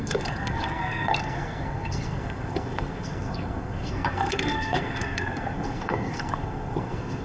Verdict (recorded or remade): remade